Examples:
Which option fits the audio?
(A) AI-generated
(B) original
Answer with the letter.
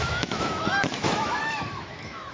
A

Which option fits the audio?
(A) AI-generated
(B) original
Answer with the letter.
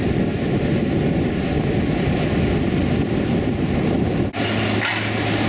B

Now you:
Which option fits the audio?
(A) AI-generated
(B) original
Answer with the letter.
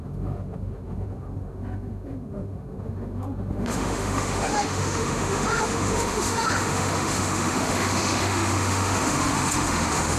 A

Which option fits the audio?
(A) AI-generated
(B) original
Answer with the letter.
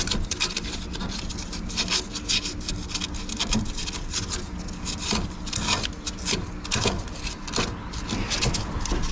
B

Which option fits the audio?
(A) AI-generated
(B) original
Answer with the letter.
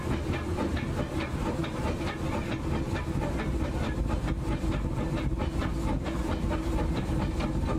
B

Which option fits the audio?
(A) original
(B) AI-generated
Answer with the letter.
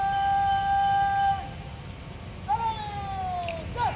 A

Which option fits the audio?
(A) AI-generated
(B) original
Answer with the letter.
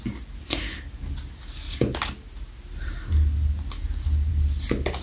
B